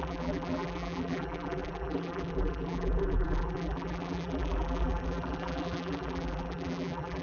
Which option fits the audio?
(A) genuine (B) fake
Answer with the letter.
B